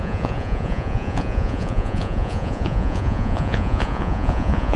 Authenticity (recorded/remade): remade